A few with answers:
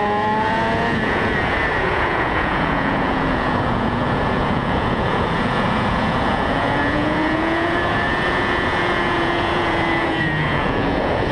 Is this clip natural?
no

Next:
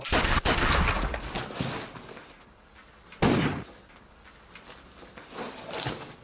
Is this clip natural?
yes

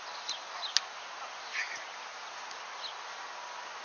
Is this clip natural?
yes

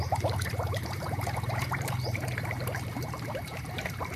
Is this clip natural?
no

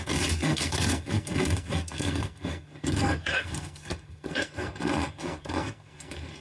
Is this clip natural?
no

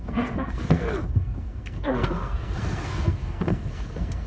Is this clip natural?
no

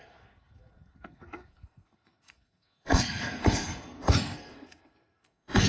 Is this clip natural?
no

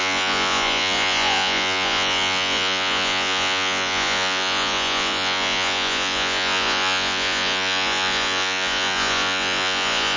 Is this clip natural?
no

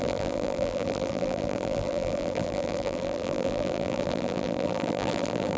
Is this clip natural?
no